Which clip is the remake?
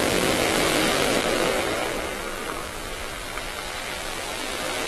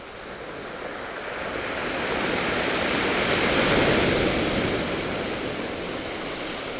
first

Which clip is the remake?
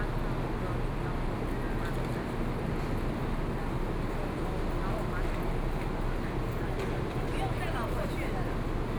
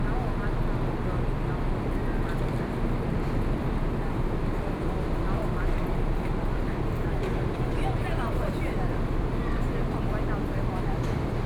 second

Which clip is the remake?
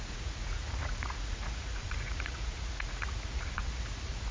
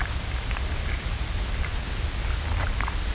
first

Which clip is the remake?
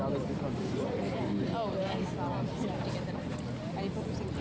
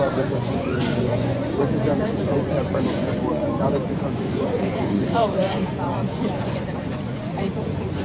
second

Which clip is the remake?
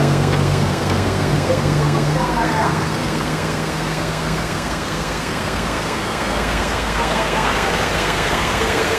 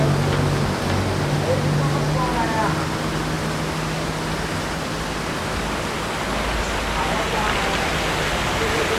first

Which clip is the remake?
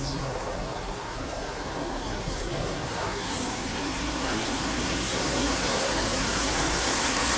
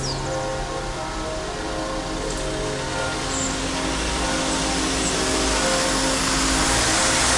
first